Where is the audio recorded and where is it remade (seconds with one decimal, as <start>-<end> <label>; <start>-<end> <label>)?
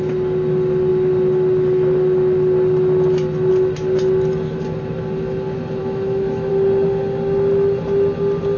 0.0-5.8 recorded; 5.8-6.5 remade; 6.5-8.6 recorded